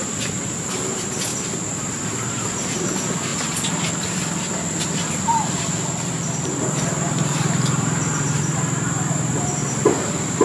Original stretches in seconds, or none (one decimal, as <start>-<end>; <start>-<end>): 1.3-1.8; 3.3-6.1